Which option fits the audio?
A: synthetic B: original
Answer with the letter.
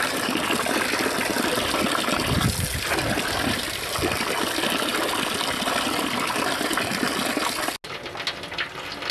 B